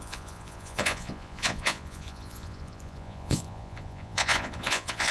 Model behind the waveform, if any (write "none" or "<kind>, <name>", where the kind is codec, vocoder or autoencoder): vocoder, Vocos